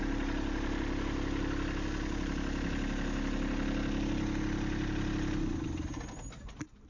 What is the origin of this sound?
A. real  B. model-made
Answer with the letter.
A